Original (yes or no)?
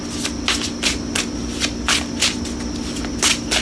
yes